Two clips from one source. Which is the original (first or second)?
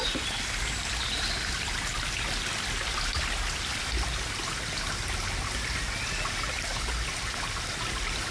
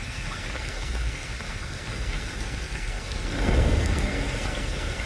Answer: first